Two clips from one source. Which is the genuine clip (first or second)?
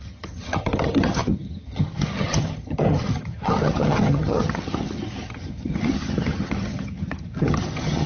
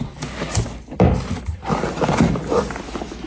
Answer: second